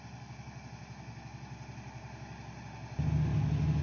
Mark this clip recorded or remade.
recorded